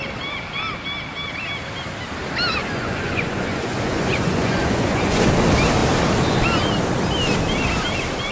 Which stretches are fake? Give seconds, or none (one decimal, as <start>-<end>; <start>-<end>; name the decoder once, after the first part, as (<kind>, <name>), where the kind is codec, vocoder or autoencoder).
2.6-5.3 (vocoder, Vocos)